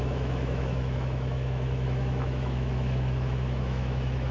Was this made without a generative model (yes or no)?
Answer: no